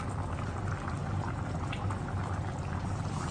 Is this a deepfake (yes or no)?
no